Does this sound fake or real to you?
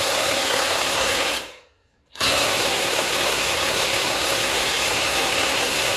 fake